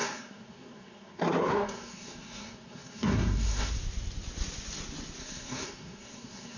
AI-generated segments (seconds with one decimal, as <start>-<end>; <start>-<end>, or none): 0.0-3.7; 5.2-6.6